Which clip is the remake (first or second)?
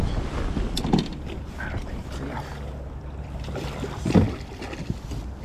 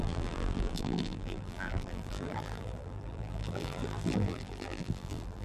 second